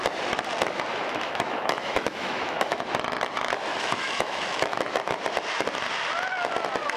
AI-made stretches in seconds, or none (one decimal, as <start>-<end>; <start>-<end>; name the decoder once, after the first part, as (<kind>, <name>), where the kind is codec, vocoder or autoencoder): 0.9-2.8 (autoencoder, DAC-VAE); 3.7-4.8